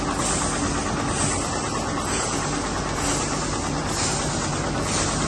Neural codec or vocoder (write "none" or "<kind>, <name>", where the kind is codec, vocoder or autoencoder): none